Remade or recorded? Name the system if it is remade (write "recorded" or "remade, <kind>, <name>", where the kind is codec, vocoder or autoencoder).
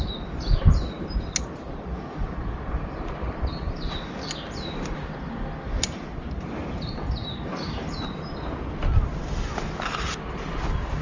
recorded